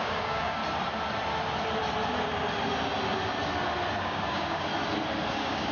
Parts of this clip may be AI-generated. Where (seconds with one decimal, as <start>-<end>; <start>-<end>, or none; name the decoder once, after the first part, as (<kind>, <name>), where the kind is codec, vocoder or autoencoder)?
0.0-0.6 (codec, DAC); 4.0-4.7; 5.3-5.7